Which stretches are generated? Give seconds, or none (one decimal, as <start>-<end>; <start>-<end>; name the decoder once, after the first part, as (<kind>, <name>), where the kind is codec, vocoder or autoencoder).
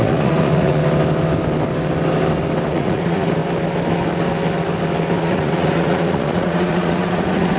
0.0-0.8 (vocoder, Vocos); 2.7-3.4; 5.2-7.6